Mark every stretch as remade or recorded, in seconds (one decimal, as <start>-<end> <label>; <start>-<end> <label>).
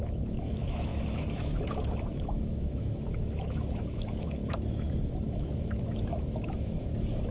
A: 0.0-7.3 remade